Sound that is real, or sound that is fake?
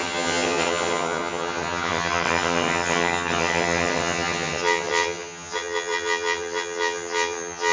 fake